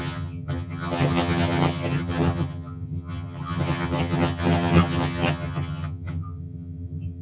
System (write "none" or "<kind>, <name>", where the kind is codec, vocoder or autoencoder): vocoder, HiFi-GAN